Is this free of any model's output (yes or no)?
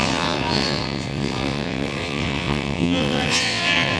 no